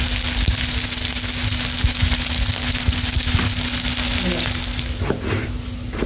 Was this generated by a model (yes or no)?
no